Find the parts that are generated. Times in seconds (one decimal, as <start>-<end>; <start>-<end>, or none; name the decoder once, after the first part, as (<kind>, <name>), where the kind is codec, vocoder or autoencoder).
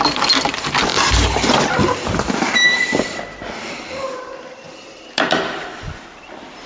0.0-0.9 (vocoder, BigVGAN v2); 4.9-6.7